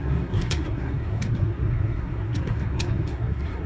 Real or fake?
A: fake